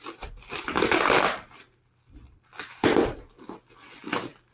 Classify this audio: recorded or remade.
remade